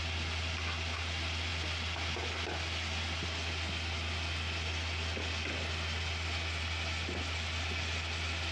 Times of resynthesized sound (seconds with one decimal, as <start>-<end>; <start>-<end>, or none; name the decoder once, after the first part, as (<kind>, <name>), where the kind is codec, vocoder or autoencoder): none